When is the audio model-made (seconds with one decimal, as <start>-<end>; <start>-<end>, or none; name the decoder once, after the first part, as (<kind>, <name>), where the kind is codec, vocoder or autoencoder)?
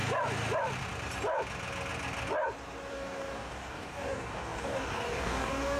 2.9-5.8 (codec, DAC)